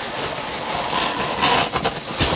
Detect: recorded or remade recorded